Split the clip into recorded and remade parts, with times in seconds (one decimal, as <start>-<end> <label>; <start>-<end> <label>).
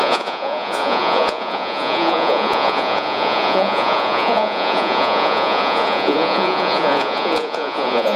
0.0-8.2 remade